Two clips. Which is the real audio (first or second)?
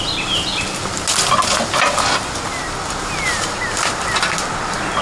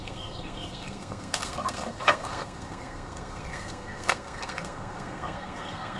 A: first